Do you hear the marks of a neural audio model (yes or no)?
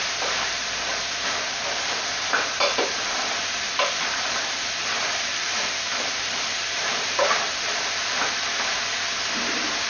yes